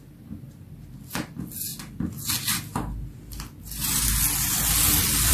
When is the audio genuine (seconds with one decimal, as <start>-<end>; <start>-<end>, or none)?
0.0-5.3